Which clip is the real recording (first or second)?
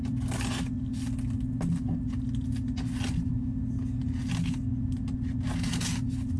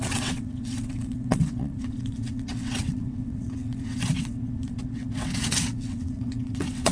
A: first